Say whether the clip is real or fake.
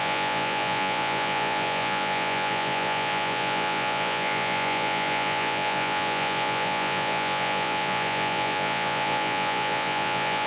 fake